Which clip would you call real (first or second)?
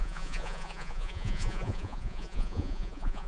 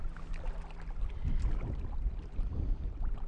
second